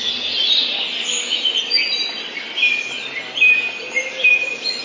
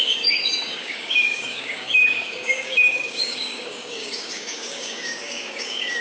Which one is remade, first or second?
second